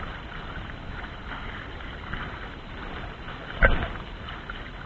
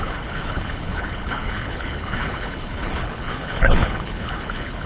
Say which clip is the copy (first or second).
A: second